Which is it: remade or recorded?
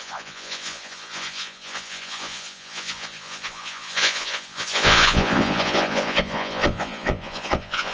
remade